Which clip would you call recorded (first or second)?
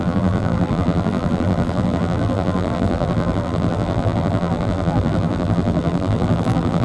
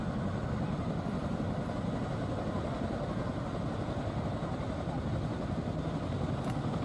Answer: second